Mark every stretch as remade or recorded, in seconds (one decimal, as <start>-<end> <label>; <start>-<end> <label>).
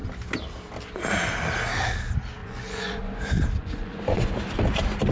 0.0-2.4 recorded; 2.4-3.0 remade; 3.0-3.6 recorded; 3.6-4.3 remade; 4.3-5.1 recorded